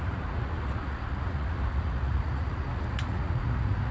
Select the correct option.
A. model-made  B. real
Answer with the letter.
A